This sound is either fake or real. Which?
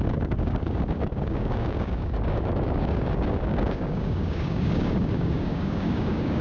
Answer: fake